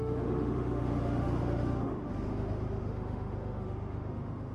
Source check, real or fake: fake